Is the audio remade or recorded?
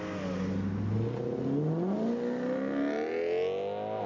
recorded